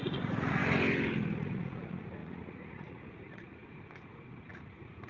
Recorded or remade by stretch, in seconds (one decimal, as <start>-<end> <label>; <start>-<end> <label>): 0.0-0.6 remade; 0.6-1.4 recorded; 1.4-5.1 remade